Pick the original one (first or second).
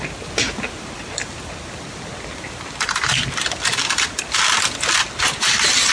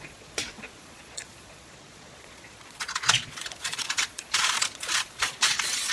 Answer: first